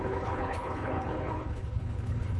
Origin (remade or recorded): remade